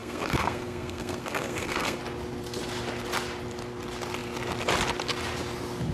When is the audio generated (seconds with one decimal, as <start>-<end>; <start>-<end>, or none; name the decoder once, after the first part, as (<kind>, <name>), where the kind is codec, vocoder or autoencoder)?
0.0-2.0 (codec, SNAC)